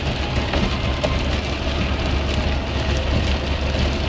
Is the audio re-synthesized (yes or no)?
no